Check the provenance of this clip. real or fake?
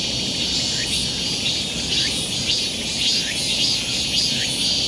real